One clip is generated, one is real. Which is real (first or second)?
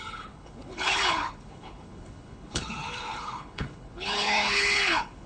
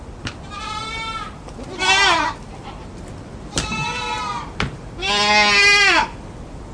second